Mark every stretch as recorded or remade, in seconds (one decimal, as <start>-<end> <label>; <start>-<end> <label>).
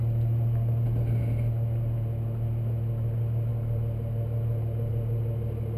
0.0-5.8 recorded